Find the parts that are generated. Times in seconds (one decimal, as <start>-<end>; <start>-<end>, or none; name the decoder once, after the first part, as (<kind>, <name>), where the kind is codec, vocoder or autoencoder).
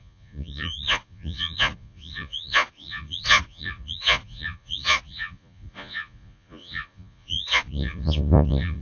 0.0-8.8 (vocoder, Vocos)